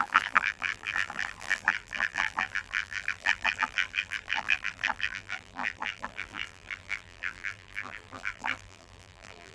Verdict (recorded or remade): remade